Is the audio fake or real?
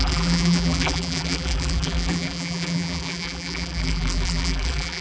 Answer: fake